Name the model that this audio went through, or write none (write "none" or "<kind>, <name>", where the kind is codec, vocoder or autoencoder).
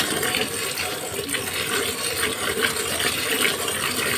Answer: none